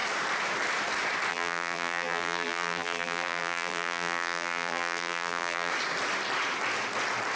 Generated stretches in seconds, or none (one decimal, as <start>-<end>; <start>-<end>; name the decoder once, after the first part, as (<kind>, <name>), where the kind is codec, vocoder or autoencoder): 1.3-5.7 (vocoder, BigVGAN v2)